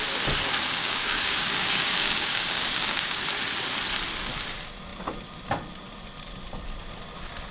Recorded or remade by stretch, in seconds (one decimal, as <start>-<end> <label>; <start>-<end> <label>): 0.0-0.8 recorded; 0.8-3.2 remade; 3.2-7.5 recorded